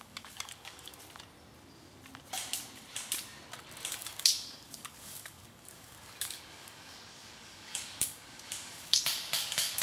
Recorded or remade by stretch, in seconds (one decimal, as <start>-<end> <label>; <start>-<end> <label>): 0.0-0.9 remade; 0.9-3.9 recorded; 3.9-9.8 remade